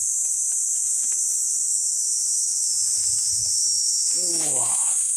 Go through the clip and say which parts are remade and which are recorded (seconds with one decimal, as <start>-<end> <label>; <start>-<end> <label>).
0.0-5.2 remade